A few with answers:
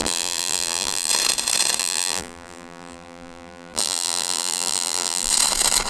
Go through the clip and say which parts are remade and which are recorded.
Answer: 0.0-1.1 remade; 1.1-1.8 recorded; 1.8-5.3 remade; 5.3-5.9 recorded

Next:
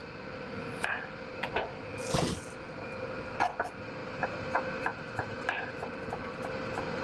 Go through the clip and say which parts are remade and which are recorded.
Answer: 0.0-4.0 recorded; 4.0-4.5 remade; 4.5-4.9 recorded; 4.9-5.6 remade; 5.6-7.0 recorded

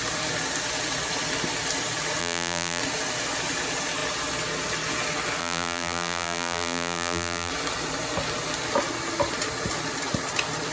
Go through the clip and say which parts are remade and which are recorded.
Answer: 0.0-2.2 recorded; 2.2-2.8 remade; 2.8-5.4 recorded; 5.4-7.5 remade; 7.5-10.7 recorded

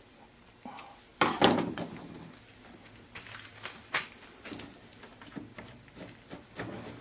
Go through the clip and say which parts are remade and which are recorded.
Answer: 0.0-1.1 recorded; 1.1-1.9 remade; 1.9-2.5 recorded; 2.5-4.0 remade; 4.0-7.0 recorded